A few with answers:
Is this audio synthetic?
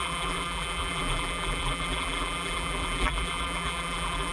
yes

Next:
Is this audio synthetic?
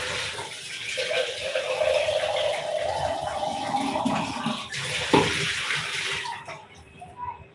yes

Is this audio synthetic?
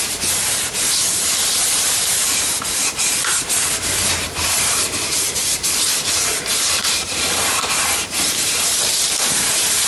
yes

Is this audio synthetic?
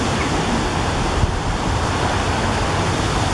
no